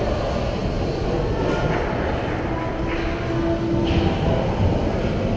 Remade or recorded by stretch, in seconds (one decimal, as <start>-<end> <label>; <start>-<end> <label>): 0.0-5.4 recorded